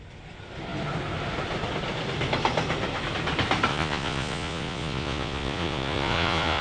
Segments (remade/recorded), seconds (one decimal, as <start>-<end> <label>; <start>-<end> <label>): 0.0-3.7 recorded; 3.7-6.6 remade